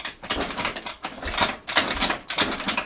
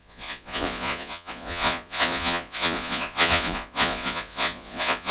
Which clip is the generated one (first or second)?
second